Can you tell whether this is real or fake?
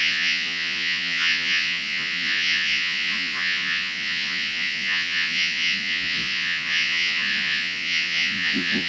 fake